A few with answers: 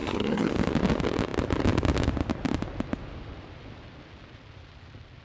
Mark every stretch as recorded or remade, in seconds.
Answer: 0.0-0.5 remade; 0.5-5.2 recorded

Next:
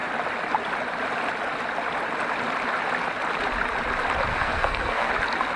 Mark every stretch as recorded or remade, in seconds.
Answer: 0.0-4.3 recorded; 4.3-5.1 remade; 5.1-5.6 recorded

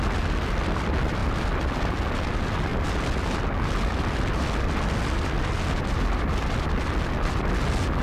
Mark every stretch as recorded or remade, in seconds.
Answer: 0.0-8.0 recorded

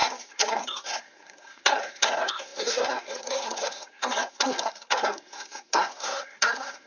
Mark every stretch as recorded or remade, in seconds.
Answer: 0.0-6.9 remade

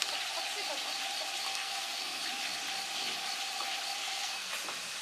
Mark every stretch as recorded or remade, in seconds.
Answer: 0.0-1.5 recorded; 1.5-2.2 remade; 2.2-4.0 recorded; 4.0-4.5 remade; 4.5-5.0 recorded